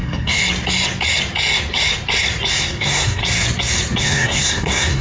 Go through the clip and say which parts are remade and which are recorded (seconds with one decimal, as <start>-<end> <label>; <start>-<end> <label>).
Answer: 0.0-0.4 remade; 0.4-2.5 recorded; 2.5-3.2 remade; 3.2-4.0 recorded; 4.0-5.0 remade